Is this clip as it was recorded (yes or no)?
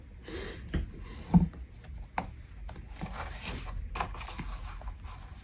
yes